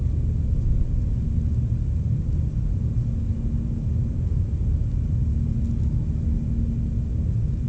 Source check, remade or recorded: recorded